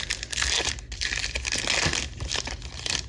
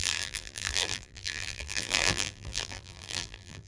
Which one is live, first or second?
first